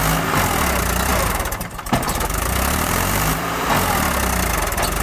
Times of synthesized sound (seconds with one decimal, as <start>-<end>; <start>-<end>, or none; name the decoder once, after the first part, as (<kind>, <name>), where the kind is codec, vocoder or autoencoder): 1.1-3.7 (vocoder, BigVGAN v2)